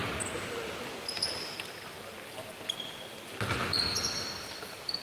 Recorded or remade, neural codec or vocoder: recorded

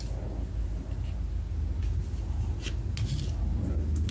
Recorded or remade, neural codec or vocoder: recorded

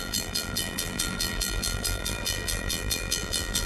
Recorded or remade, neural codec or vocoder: remade, vocoder, BigVGAN v2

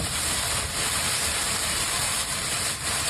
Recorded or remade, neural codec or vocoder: remade, vocoder, BigVGAN v2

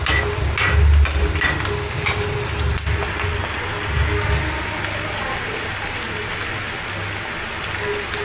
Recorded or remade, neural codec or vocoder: recorded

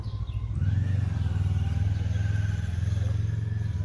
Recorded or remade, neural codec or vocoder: recorded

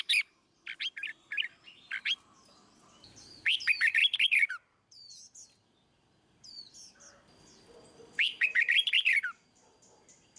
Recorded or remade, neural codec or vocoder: remade, vocoder, BigVGAN v2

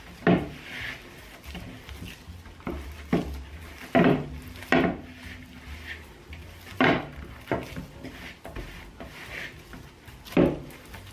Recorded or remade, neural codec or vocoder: recorded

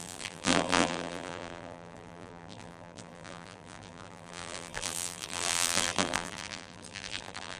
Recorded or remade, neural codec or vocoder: remade, vocoder, BigVGAN v2